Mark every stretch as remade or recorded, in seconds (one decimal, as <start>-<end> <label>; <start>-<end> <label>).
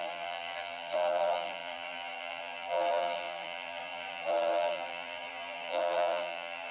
0.0-6.7 remade